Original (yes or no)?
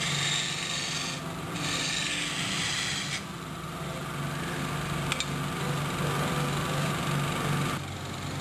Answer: yes